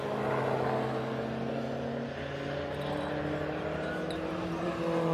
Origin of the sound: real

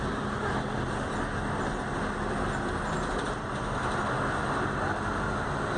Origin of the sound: real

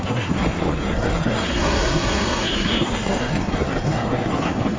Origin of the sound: fake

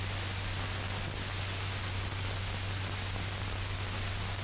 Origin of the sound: real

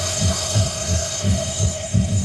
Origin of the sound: fake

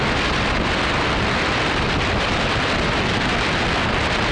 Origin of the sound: real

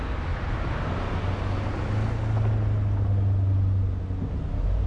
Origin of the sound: real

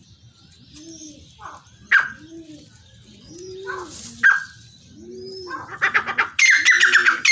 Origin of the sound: real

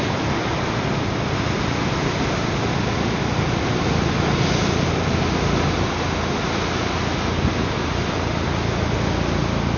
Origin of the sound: real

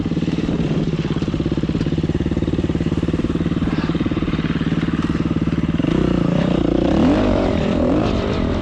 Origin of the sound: fake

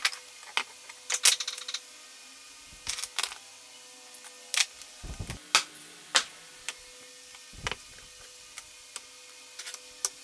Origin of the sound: real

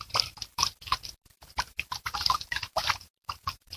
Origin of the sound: fake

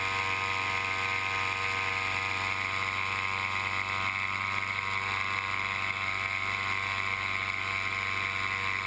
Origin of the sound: real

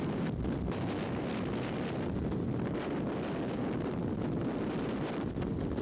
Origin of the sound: real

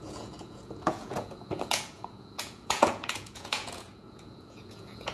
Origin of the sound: fake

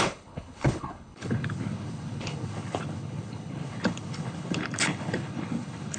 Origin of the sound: fake